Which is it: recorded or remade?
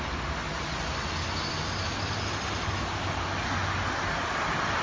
recorded